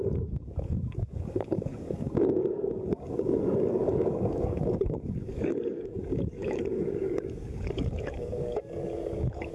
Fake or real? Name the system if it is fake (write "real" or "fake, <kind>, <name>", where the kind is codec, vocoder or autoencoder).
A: fake, codec, DAC